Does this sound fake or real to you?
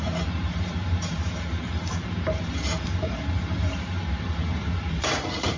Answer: fake